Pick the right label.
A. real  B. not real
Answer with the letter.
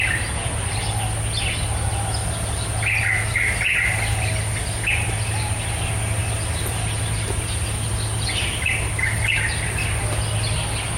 A